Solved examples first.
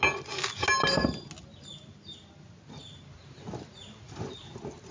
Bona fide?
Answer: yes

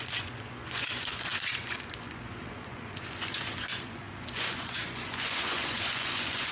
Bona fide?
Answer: no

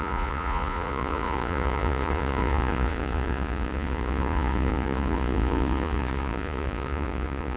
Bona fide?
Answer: no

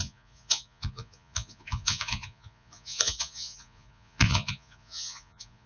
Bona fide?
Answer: no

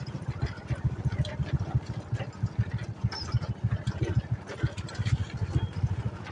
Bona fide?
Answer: yes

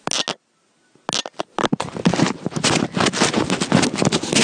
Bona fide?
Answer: yes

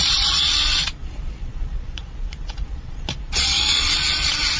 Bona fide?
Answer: no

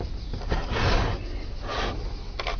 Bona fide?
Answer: yes